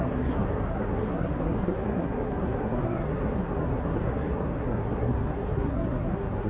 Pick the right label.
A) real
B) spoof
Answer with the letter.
B